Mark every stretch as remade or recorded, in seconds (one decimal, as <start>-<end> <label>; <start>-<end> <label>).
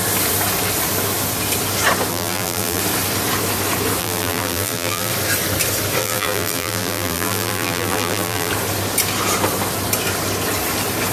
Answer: 0.0-2.1 recorded; 2.1-2.8 remade; 2.8-4.0 recorded; 4.0-5.1 remade; 5.1-6.0 recorded; 6.0-8.5 remade; 8.5-11.1 recorded